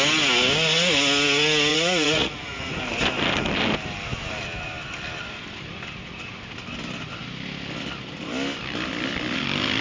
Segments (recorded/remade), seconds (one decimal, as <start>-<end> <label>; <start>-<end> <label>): 0.0-1.7 recorded; 1.7-2.7 remade; 2.7-9.8 recorded